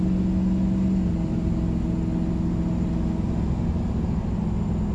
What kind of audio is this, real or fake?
real